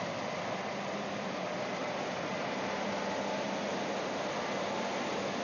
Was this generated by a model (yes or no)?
no